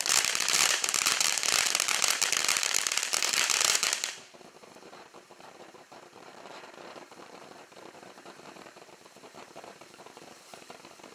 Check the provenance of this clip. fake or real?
fake